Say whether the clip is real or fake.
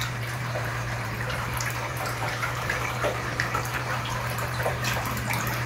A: fake